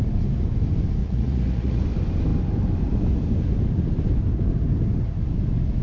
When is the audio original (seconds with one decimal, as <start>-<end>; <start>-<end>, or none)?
0.0-1.0; 1.8-5.8